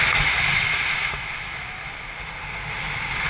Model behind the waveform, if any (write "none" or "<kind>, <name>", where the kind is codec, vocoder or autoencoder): none